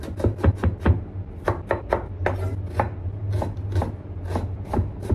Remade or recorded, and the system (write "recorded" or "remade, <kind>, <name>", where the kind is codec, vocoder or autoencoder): recorded